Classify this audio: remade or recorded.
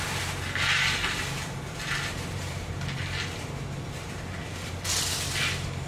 remade